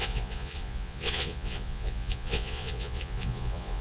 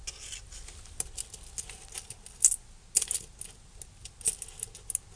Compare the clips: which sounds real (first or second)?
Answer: second